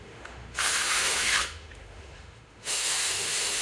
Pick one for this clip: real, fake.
fake